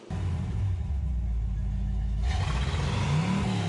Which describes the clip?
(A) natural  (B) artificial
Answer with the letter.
A